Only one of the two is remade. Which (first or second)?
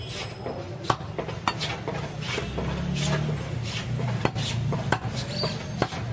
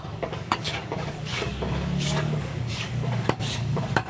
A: second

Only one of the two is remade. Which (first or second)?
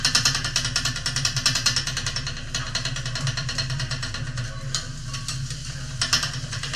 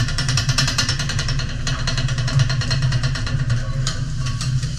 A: second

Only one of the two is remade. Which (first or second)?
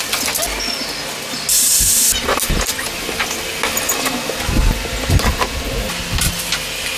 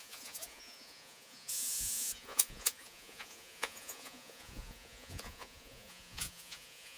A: second